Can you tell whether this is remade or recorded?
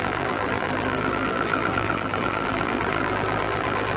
remade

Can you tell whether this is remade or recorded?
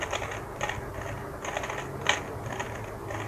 recorded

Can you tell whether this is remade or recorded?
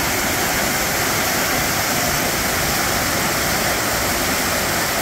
recorded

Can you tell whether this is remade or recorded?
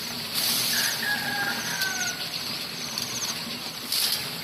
remade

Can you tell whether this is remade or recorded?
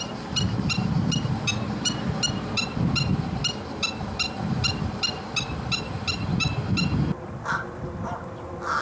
recorded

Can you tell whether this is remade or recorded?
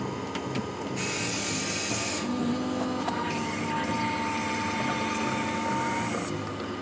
recorded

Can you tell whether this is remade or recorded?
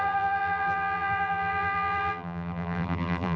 remade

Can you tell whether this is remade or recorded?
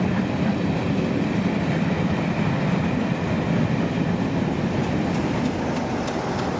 remade